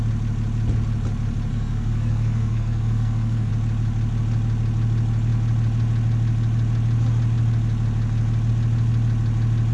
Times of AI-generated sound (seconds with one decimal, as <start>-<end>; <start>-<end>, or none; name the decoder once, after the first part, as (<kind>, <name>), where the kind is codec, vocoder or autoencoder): 1.5-3.5 (codec, SNAC)